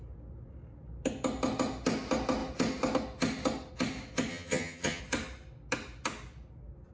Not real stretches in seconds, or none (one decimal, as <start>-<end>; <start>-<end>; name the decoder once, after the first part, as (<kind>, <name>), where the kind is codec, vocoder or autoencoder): 4.3-5.0 (vocoder, HiFi-GAN)